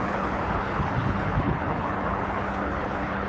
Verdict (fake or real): fake